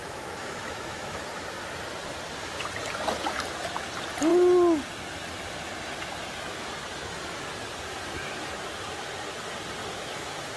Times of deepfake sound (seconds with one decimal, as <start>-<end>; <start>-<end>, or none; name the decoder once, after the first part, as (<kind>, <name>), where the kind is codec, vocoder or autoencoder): 0.0-1.2 (autoencoder, DAC-VAE); 9.8-10.6